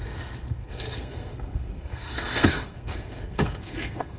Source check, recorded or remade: remade